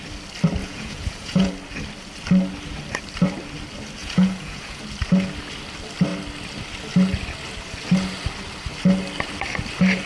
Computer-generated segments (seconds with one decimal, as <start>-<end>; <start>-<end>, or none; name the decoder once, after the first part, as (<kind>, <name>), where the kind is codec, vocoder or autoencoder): 0.6-1.5 (vocoder, Vocos); 4.0-4.8